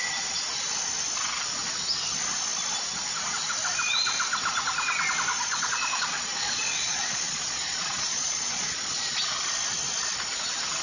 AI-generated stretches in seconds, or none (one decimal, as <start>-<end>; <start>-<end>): 5.3-9.2